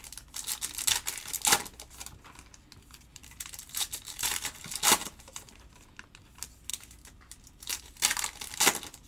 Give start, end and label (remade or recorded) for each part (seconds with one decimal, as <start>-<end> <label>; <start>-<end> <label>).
0.0-3.1 recorded; 3.1-5.7 remade; 5.7-6.7 recorded; 6.7-7.9 remade; 7.9-9.1 recorded

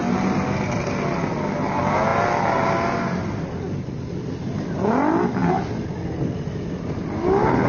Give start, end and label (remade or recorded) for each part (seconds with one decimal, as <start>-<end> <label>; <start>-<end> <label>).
0.0-7.7 recorded

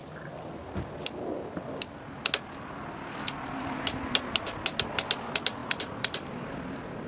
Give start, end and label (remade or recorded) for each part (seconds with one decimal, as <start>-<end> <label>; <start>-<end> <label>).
0.0-5.6 recorded; 5.6-6.6 remade; 6.6-7.1 recorded

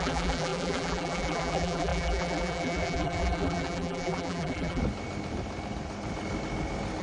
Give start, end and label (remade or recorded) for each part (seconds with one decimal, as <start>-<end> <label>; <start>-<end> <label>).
0.0-4.8 remade; 4.8-7.0 recorded

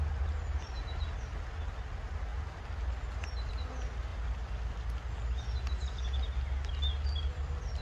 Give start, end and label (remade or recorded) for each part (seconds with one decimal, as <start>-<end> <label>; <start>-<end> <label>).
0.0-7.8 recorded

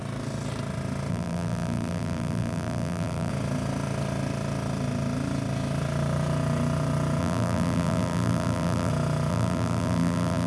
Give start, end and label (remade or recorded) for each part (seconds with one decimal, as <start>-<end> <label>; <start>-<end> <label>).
0.0-1.1 recorded; 1.1-3.3 remade; 3.3-7.2 recorded; 7.2-8.9 remade; 8.9-9.3 recorded; 9.3-10.5 remade